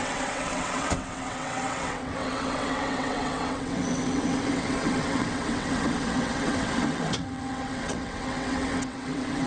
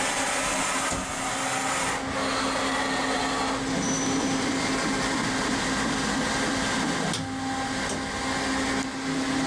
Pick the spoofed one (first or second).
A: first